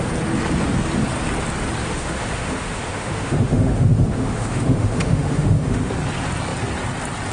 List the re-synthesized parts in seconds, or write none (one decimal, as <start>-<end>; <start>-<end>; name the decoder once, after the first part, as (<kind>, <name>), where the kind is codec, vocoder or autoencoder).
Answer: 1.8-5.9 (autoencoder, DAC-VAE)